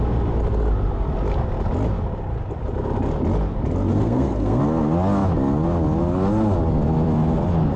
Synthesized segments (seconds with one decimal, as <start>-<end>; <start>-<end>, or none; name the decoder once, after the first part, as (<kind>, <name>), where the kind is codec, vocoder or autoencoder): 3.9-4.6 (codec, SNAC)